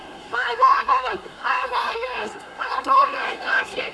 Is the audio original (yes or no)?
no